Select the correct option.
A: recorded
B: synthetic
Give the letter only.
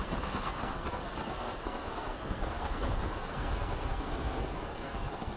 B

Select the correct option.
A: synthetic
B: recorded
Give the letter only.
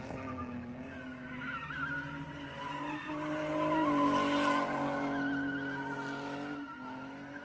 B